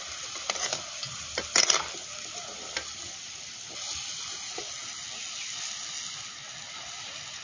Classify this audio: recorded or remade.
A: recorded